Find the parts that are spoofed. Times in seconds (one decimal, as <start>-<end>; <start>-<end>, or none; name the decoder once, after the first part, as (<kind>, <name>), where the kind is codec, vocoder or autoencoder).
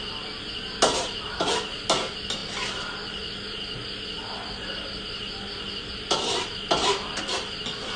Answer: none